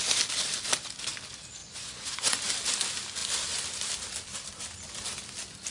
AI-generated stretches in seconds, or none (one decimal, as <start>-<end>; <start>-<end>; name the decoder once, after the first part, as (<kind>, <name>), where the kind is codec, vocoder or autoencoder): 1.6-2.4 (vocoder, Vocos)